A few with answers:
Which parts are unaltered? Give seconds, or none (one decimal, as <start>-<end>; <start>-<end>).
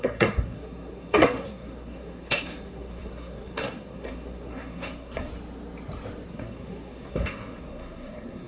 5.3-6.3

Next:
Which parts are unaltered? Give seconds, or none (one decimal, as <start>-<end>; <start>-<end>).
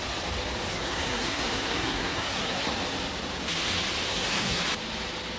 0.0-0.7; 2.7-4.1; 4.6-5.4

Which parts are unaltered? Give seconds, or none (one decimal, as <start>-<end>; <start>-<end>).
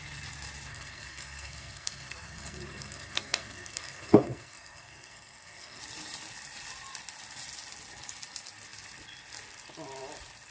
0.0-0.7; 5.8-10.5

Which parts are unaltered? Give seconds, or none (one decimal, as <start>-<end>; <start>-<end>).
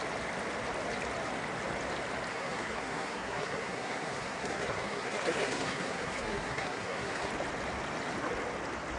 0.0-2.3; 7.3-9.0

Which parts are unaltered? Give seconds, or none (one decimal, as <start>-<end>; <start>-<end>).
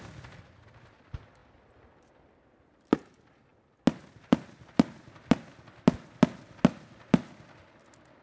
0.0-8.2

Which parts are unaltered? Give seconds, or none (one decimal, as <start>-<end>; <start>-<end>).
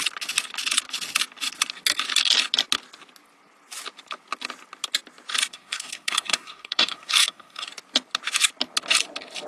0.0-5.5; 7.7-9.5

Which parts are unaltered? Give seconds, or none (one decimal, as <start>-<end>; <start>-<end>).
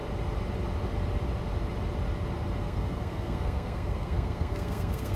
0.0-2.6